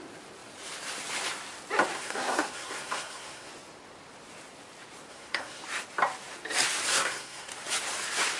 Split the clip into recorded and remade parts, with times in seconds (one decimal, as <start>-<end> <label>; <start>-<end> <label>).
0.0-1.9 recorded; 1.9-3.5 remade; 3.5-5.1 recorded; 5.1-5.6 remade; 5.6-6.9 recorded; 6.9-7.5 remade; 7.5-8.4 recorded